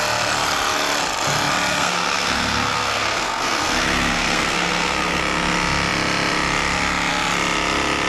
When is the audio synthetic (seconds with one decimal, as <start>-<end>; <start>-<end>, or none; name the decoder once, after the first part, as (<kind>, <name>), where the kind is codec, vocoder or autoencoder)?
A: 1.7-5.2 (codec, SNAC)